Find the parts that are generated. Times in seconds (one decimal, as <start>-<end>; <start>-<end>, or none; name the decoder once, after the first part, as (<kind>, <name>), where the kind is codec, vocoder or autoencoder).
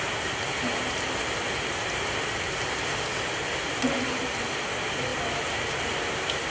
none